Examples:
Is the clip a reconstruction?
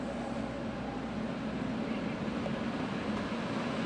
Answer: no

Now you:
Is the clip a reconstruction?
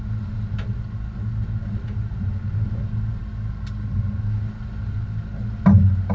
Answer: no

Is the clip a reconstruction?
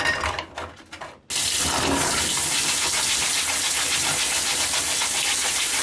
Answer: no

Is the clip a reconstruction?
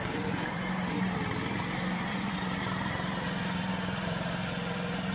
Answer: yes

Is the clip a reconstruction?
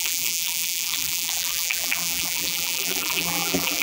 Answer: yes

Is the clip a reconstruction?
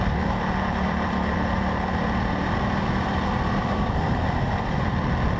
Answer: yes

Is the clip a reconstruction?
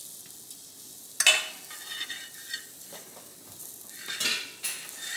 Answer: no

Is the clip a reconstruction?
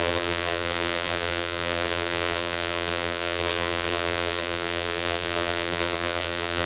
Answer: yes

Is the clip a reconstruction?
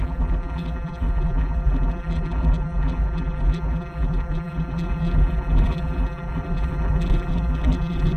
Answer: yes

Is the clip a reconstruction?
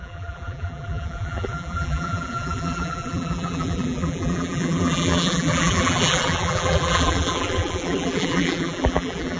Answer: yes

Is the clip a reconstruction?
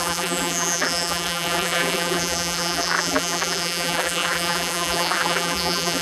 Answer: yes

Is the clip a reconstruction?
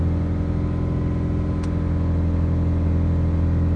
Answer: no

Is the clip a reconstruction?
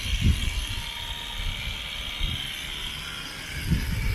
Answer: no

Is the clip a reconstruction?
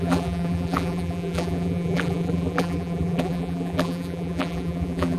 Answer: yes